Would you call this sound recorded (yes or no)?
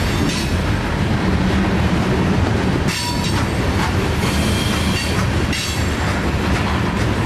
yes